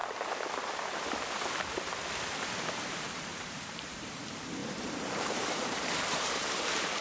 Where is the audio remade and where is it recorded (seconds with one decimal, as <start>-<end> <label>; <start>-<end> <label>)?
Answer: 0.0-3.3 recorded; 3.3-4.0 remade; 4.0-4.6 recorded; 4.6-7.0 remade